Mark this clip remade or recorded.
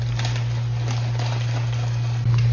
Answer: recorded